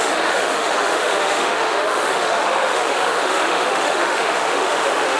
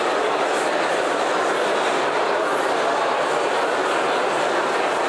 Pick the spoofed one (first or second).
first